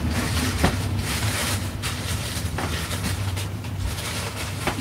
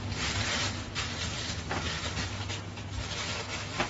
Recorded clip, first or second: second